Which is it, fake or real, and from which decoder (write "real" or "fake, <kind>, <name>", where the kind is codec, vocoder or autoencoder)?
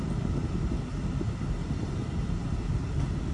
real